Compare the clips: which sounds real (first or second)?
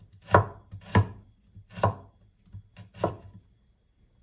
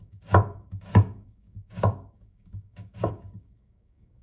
first